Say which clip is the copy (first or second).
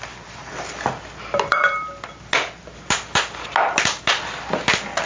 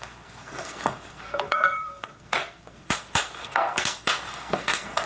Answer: second